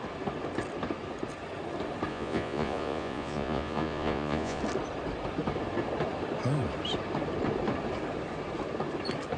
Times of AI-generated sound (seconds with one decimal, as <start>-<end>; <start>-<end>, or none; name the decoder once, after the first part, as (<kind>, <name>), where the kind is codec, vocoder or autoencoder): 2.1-4.6 (vocoder, Vocos)